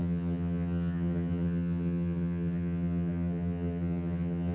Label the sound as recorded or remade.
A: remade